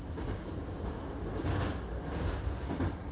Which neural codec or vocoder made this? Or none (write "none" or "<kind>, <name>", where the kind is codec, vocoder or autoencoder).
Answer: none